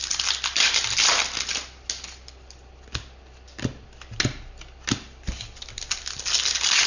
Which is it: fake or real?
real